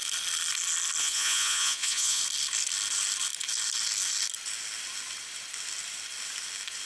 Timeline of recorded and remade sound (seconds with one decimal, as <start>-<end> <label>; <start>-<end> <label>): 0.0-1.0 recorded; 1.0-2.2 remade; 2.2-6.9 recorded